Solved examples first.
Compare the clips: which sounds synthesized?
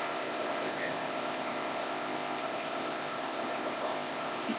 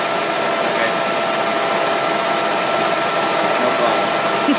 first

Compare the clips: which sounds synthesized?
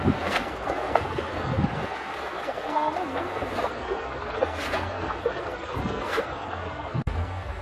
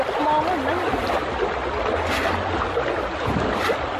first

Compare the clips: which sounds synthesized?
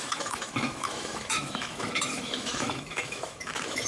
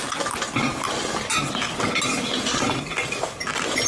first